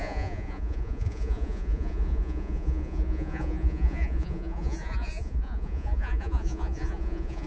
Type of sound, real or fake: fake